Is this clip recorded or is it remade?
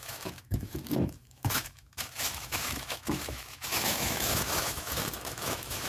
remade